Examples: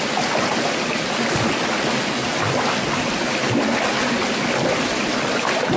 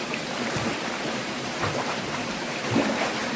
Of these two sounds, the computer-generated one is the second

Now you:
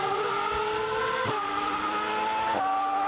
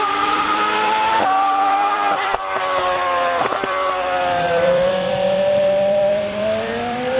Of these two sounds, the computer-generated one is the second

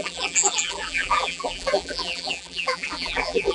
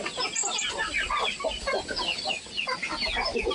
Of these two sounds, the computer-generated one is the first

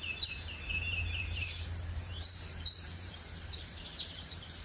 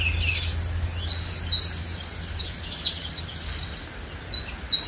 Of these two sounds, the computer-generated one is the first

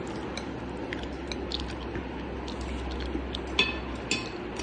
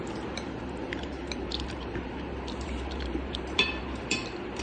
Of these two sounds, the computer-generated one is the second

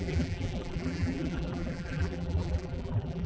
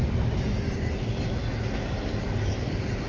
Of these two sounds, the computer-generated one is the first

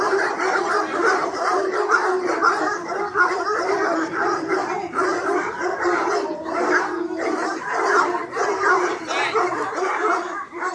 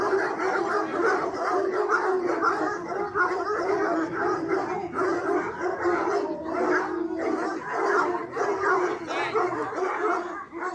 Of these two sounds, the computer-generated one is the first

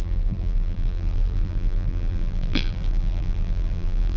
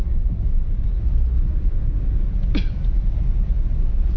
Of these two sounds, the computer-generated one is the first